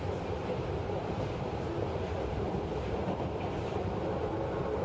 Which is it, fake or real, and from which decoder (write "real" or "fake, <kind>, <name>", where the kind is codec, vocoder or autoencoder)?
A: real